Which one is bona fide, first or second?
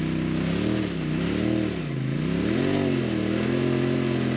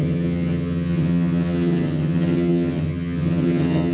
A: first